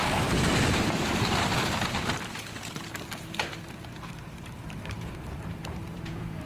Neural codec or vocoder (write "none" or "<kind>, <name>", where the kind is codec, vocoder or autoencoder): vocoder, BigVGAN v2